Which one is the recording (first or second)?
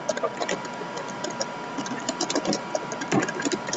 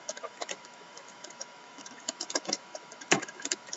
first